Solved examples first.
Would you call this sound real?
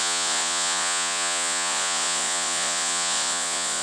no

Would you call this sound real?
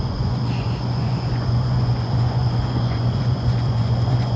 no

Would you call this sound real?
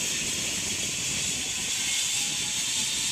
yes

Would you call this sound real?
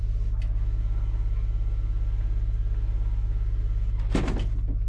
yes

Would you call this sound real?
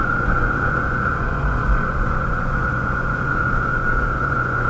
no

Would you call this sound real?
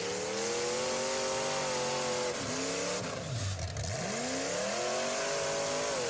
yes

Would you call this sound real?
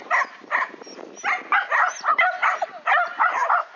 yes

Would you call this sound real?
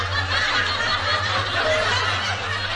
yes